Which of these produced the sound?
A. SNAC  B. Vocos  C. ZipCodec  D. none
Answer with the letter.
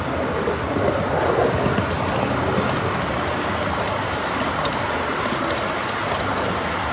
D